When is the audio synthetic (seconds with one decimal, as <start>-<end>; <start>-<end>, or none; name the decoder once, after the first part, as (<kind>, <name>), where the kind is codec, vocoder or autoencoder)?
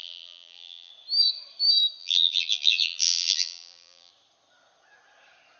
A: 0.0-0.9 (vocoder, BigVGAN v2); 2.0-4.1